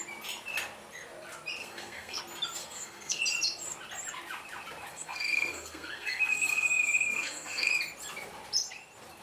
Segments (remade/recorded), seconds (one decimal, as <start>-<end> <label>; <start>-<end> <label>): 0.0-1.6 recorded; 1.6-2.2 remade; 2.2-2.6 recorded; 2.6-3.2 remade; 3.2-4.9 recorded; 4.9-7.7 remade; 7.7-9.2 recorded